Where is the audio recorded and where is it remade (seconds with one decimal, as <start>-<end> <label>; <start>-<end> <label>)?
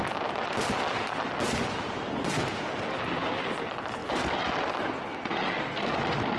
0.0-6.4 recorded